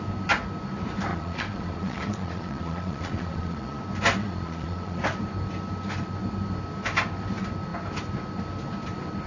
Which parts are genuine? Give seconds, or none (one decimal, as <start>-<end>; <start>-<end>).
0.0-1.1; 3.8-4.2; 5.0-9.3